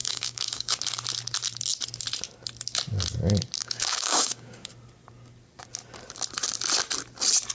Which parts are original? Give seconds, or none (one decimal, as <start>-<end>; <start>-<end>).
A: 0.8-3.6; 4.7-7.5